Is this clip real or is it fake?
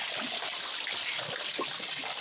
fake